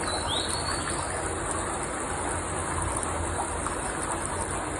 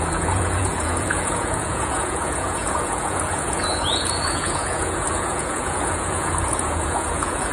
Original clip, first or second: first